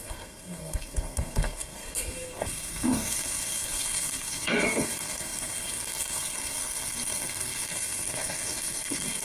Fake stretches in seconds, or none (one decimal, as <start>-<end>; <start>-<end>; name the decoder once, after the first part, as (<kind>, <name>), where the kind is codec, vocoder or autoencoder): 0.0-9.2 (codec, SNAC)